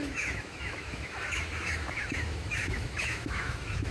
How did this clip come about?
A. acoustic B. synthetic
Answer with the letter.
B